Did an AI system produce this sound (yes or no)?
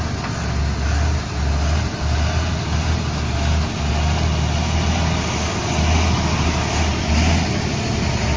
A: no